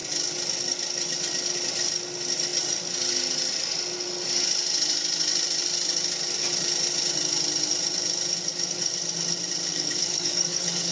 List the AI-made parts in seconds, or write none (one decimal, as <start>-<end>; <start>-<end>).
9.7-10.9